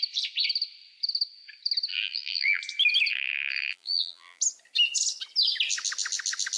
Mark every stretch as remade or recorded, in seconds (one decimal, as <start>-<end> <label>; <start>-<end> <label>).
0.0-1.9 recorded; 1.9-2.6 remade; 2.6-3.1 recorded; 3.1-4.4 remade; 4.4-6.6 recorded